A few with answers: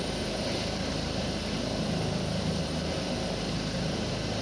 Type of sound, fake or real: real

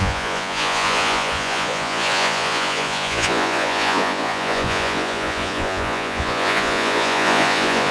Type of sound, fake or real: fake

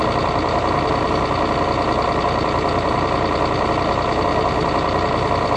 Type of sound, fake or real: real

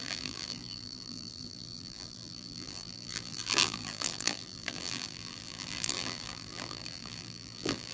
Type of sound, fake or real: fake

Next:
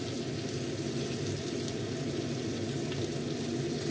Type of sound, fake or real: real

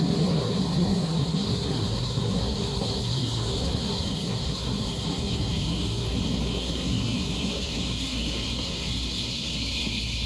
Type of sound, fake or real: fake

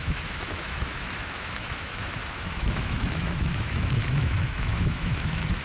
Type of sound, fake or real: fake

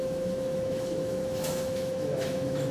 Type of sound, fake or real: fake